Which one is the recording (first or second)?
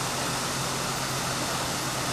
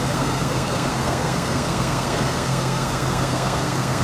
first